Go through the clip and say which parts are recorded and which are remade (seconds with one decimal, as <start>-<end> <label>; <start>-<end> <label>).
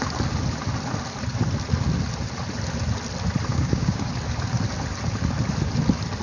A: 0.0-3.5 recorded; 3.5-4.1 remade; 4.1-6.2 recorded